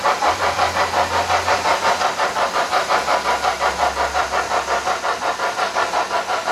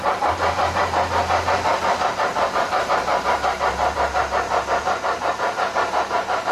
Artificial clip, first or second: second